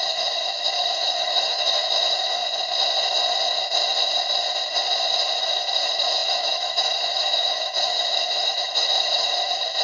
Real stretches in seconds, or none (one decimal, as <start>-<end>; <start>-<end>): 2.4-5.4